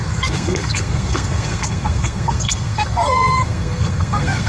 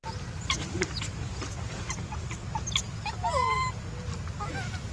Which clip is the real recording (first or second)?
second